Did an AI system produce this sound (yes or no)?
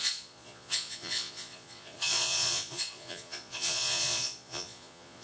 yes